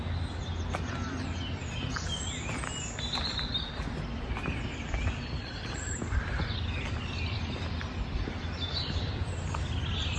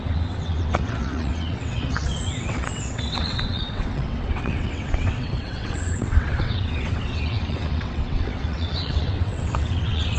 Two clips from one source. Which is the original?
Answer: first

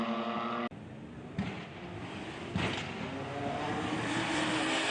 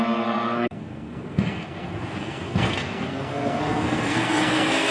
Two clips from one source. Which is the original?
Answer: first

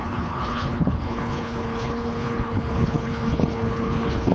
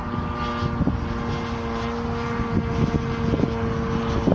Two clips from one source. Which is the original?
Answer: second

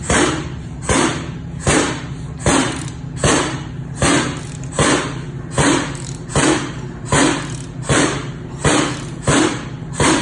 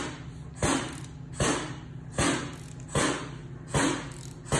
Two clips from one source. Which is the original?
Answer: second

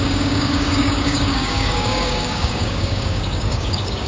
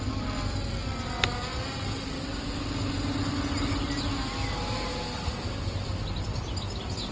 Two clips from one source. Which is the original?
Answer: second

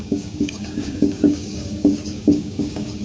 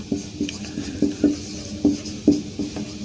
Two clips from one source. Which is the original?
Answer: second